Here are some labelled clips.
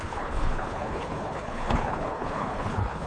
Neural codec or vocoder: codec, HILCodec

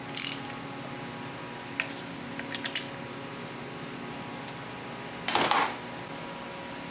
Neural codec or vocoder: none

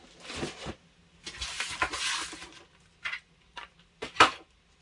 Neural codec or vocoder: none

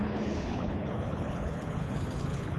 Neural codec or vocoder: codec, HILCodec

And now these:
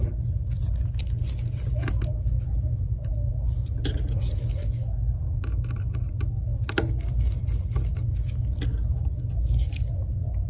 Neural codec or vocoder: none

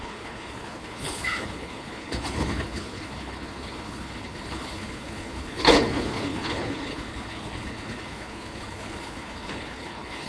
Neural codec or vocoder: codec, HILCodec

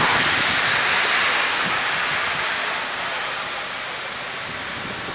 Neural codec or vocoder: none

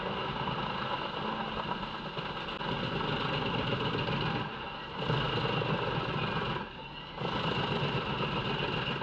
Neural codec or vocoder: none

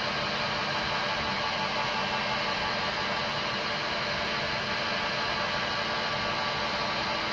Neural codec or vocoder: none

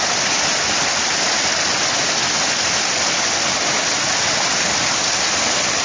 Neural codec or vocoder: none